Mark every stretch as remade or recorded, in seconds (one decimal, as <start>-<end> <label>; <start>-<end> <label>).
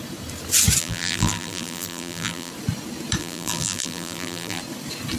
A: 0.0-0.8 recorded; 0.8-2.5 remade; 2.5-3.2 recorded; 3.2-4.6 remade; 4.6-5.2 recorded